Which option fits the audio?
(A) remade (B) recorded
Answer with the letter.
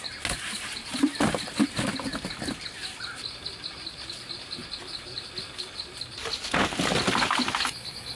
B